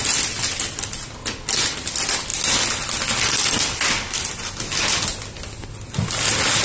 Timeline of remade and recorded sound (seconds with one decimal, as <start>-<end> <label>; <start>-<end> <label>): 0.0-6.6 recorded